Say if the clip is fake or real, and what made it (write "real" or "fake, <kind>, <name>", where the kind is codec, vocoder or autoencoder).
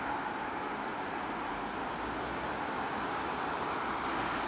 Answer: real